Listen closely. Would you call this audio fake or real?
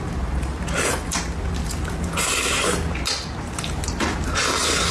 real